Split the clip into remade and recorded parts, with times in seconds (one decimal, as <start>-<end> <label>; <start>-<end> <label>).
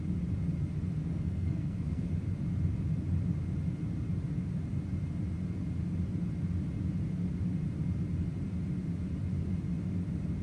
0.0-1.1 recorded; 1.1-2.1 remade; 2.1-10.4 recorded